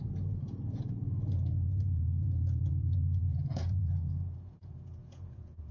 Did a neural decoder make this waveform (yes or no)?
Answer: yes